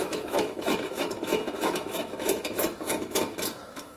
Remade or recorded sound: remade